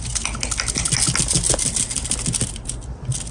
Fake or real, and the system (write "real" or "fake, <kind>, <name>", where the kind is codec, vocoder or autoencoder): real